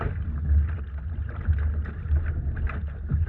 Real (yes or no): yes